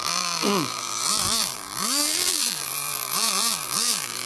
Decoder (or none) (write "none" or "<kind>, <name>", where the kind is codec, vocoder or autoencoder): vocoder, BigVGAN v2